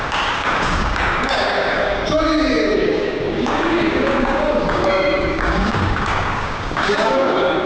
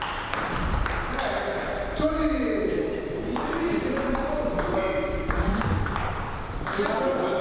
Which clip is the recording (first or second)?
second